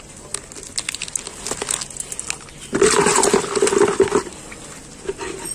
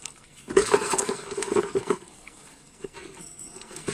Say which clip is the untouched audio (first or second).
first